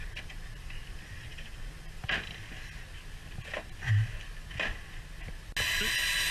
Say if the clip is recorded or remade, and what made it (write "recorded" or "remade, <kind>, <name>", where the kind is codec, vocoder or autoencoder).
recorded